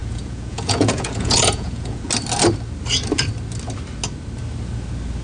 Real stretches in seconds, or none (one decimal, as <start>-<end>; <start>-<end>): 2.1-5.2